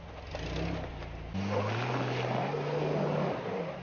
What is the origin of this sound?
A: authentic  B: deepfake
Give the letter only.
A